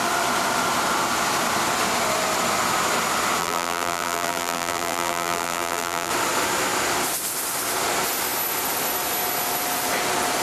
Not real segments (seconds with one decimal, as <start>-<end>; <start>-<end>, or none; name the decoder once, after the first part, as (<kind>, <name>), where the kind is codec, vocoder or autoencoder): 3.4-6.1 (vocoder, BigVGAN v2)